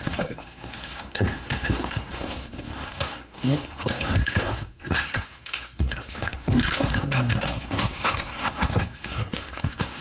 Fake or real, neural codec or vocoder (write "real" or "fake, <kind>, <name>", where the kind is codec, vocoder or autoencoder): fake, codec, SNAC